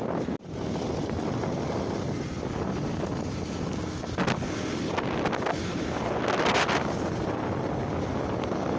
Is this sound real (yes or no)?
yes